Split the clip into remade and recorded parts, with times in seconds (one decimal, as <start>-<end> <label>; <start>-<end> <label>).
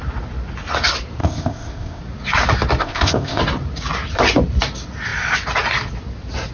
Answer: 0.0-1.2 recorded; 1.2-2.0 remade; 2.0-2.8 recorded; 2.8-3.4 remade; 3.4-6.5 recorded